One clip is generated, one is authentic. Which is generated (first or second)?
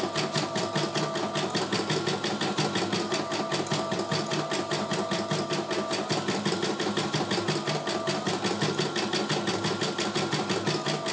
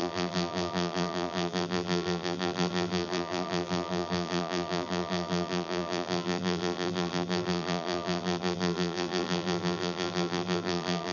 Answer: second